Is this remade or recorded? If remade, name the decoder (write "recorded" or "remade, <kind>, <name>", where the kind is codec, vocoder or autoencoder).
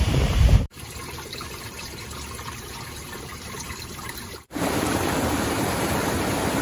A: remade, vocoder, BigVGAN v2